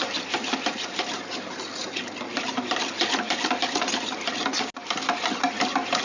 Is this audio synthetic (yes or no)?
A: no